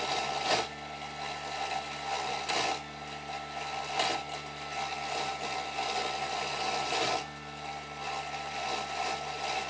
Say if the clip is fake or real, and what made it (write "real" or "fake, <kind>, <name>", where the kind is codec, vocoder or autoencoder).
real